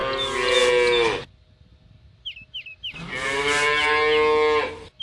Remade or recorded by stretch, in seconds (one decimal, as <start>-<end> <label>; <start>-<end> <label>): 0.0-5.0 recorded